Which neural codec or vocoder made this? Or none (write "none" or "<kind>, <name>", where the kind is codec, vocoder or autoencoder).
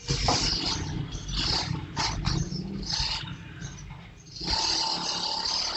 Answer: none